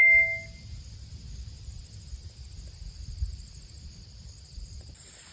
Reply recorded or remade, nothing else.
recorded